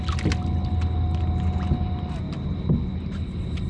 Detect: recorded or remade recorded